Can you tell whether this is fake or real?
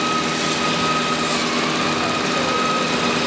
real